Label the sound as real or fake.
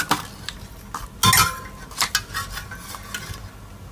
real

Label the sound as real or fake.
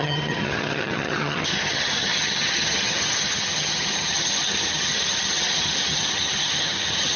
fake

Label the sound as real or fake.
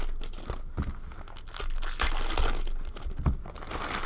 real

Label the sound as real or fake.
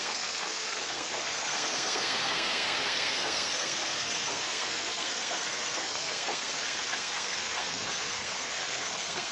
fake